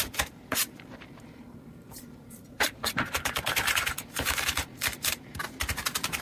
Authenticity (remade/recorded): remade